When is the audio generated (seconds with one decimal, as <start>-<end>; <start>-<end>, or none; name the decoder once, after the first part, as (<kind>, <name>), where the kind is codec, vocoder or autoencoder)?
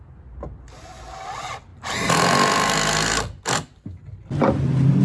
none